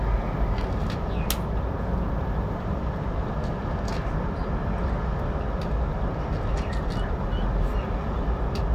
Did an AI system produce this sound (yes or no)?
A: no